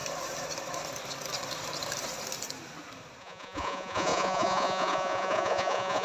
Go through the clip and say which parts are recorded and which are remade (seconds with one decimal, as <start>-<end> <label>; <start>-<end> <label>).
0.0-3.2 recorded; 3.2-6.0 remade